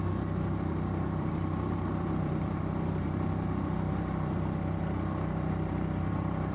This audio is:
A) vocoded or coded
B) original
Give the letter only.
A